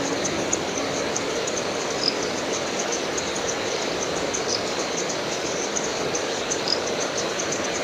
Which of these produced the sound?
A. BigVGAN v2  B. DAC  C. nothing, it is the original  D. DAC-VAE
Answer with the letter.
B